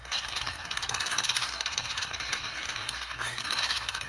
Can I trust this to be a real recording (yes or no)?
no